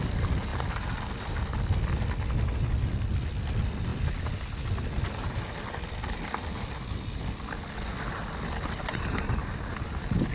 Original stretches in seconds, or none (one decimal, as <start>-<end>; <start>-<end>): 0.0-10.3